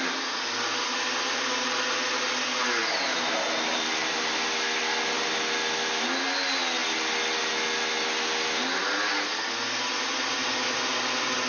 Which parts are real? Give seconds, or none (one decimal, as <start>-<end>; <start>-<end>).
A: 0.0-11.5